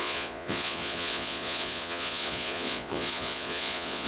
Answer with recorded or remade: remade